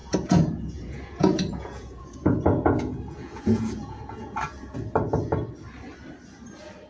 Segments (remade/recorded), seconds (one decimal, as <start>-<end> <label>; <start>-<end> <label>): 0.0-4.5 remade; 4.5-6.9 recorded